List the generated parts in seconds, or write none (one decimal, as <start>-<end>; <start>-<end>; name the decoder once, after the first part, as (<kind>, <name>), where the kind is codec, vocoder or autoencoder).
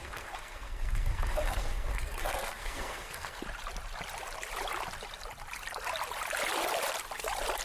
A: 0.0-3.4 (codec, SNAC)